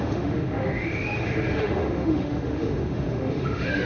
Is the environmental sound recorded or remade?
remade